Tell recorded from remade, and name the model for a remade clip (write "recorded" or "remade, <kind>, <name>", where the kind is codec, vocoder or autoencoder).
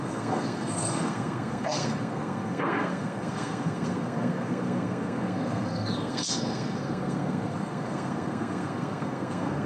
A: remade, codec, SNAC